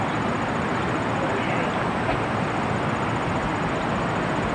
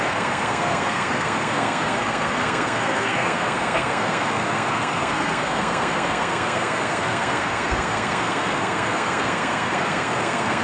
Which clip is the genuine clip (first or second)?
first